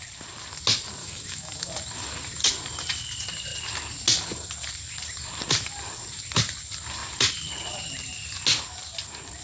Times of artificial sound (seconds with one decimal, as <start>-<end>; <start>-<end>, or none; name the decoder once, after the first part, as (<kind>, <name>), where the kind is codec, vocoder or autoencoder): 1.0-1.7 (autoencoder, DAC-VAE)